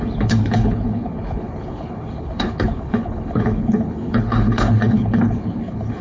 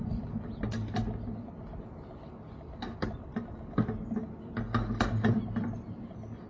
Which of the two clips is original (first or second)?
second